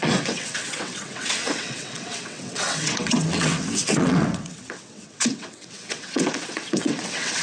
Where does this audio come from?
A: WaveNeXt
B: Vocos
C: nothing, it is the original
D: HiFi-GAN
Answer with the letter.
A